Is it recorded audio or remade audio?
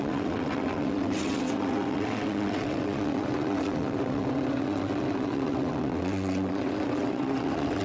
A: remade